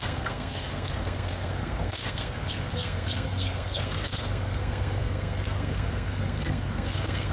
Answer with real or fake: fake